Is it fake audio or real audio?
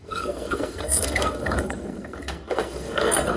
fake